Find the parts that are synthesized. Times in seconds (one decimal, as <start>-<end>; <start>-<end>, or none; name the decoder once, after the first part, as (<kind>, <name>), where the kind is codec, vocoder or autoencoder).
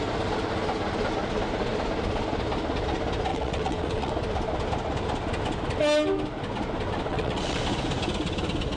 3.3-4.1 (vocoder, WaveNeXt); 7.1-7.6